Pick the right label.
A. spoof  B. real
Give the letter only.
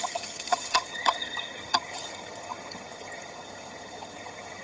A